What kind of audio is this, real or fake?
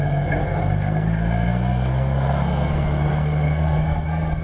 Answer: fake